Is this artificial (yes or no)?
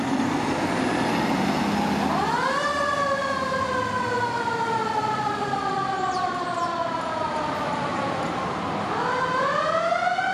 no